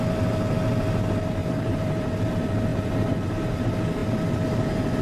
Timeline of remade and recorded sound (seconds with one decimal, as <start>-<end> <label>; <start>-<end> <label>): 0.0-1.4 recorded; 1.4-2.1 remade; 2.1-2.7 recorded; 2.7-3.3 remade; 3.3-5.0 recorded